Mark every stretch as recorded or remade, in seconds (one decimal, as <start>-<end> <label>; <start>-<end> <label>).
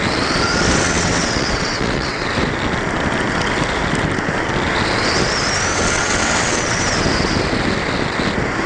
0.0-0.8 recorded; 0.8-2.3 remade; 2.3-5.7 recorded; 5.7-6.8 remade; 6.8-8.7 recorded